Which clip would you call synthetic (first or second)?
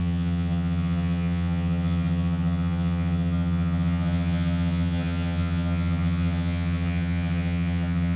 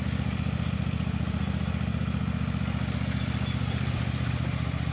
first